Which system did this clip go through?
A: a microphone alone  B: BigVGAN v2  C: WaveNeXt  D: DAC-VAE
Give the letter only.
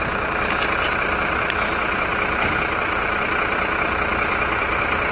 B